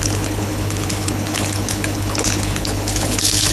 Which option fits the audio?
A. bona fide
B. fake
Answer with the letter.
B